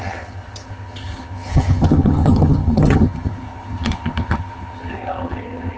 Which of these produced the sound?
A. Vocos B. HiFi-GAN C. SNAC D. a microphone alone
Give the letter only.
B